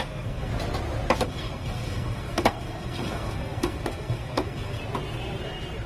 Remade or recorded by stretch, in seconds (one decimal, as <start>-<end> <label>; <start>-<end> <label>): 0.0-0.5 remade; 0.5-1.2 recorded; 1.2-4.8 remade; 4.8-5.9 recorded